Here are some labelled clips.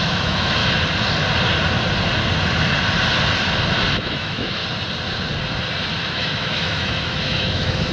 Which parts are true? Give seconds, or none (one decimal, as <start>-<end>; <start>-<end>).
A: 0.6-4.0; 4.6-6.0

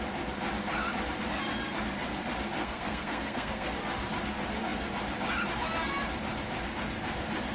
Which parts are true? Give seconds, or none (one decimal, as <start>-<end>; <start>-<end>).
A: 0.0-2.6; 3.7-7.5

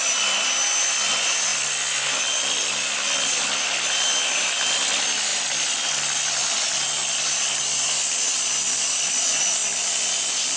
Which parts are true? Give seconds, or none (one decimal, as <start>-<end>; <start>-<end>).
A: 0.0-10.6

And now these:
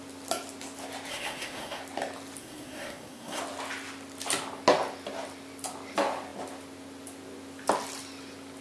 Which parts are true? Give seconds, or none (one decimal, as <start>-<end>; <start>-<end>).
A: 0.0-1.1; 1.8-2.4; 3.4-8.6